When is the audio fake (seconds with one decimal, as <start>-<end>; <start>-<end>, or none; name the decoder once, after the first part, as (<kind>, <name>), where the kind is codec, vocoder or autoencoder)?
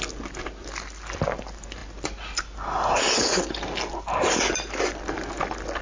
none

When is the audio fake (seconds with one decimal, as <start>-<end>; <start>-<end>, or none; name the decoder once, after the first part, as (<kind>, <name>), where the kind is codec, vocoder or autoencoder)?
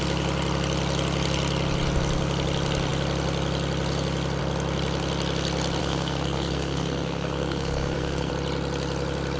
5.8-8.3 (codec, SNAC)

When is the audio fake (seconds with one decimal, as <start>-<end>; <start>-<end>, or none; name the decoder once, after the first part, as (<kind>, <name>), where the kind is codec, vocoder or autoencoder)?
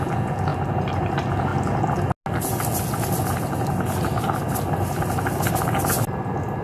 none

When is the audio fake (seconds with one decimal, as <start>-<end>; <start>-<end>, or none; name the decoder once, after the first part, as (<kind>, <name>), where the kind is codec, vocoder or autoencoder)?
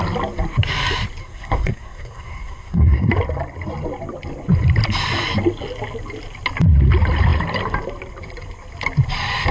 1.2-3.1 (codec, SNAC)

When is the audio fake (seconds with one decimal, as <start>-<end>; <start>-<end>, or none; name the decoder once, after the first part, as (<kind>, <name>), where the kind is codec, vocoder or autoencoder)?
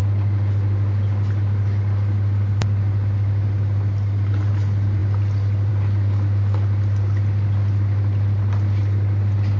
none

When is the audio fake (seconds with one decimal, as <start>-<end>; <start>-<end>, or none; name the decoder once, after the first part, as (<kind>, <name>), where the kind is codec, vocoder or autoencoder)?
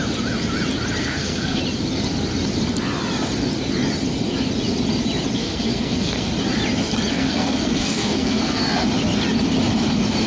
1.0-1.6 (codec, SNAC); 5.4-6.3; 7.1-8.6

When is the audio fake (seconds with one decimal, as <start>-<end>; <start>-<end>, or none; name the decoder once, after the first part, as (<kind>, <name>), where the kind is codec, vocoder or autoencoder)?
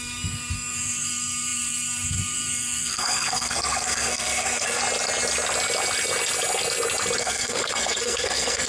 0.0-4.8 (codec, SNAC); 7.2-8.7